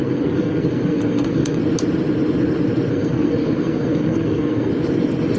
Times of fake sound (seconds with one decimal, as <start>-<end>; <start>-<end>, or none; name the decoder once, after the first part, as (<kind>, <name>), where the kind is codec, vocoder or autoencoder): 0.0-1.6 (codec, SNAC); 2.9-4.7